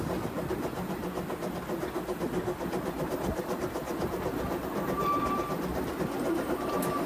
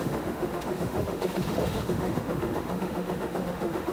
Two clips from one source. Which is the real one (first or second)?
first